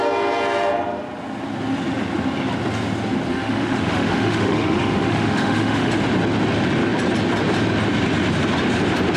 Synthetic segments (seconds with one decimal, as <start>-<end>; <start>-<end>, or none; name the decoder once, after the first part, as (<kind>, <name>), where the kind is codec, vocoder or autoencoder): 3.3-5.9 (autoencoder, DAC-VAE)